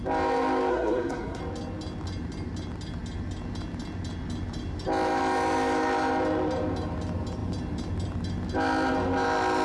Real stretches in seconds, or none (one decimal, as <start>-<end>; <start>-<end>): 0.0-0.7; 1.4-9.6